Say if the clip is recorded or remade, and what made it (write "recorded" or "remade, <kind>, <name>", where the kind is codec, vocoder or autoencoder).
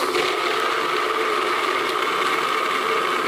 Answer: recorded